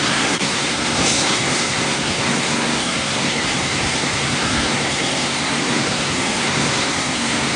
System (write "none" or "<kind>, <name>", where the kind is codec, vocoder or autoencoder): codec, SNAC